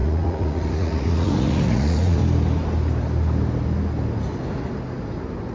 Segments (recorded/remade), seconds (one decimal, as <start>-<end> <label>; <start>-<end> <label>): 0.0-2.2 remade; 2.2-5.5 recorded